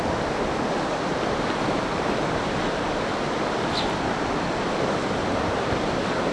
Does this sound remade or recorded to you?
recorded